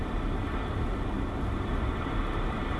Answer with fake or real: real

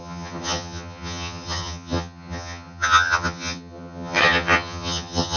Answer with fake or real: fake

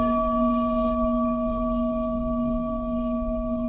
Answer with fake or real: fake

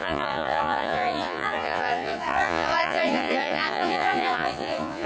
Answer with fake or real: fake